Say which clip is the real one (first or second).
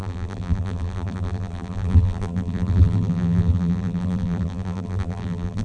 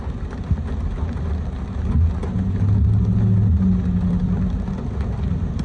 second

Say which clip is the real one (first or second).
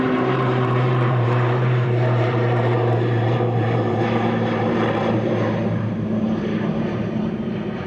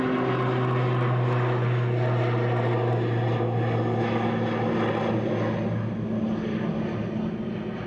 second